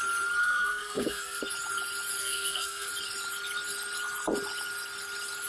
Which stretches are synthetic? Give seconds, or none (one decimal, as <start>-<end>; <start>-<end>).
0.4-1.4; 2.2-2.9